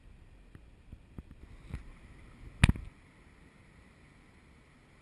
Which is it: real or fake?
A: real